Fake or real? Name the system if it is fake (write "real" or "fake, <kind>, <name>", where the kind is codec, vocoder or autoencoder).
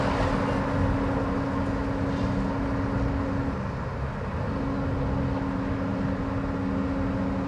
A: real